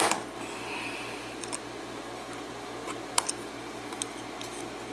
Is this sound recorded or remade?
recorded